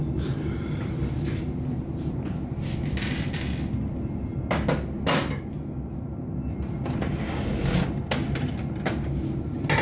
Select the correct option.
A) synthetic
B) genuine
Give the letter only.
B